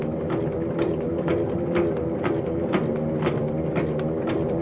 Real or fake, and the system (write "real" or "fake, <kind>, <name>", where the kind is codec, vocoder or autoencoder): real